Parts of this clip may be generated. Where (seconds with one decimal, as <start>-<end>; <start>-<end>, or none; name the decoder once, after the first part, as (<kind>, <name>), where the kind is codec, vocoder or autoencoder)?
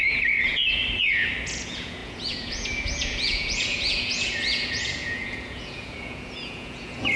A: 0.0-0.8 (vocoder, Vocos); 1.4-7.2